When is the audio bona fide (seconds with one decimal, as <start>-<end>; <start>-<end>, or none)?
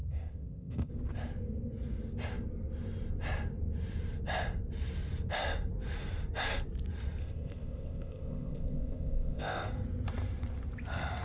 0.9-7.2; 9.7-11.2